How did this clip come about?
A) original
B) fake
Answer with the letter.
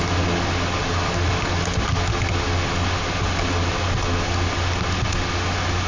A